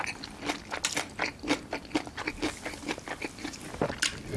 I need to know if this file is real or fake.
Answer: real